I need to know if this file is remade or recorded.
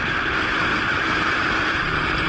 remade